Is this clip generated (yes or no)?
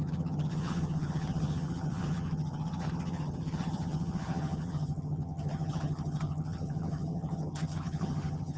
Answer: yes